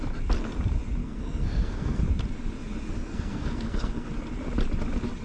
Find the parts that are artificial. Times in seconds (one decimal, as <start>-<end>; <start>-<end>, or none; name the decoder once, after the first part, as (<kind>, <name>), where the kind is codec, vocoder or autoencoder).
1.0-2.0 (codec, SNAC); 2.9-4.1